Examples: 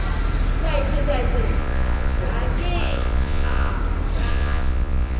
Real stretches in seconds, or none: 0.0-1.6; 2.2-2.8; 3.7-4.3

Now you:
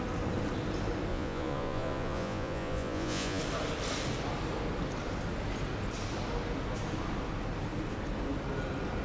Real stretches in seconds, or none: 0.0-1.1; 3.4-9.0

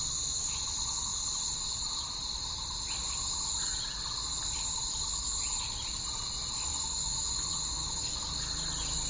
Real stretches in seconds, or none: 0.0-6.7; 8.1-9.1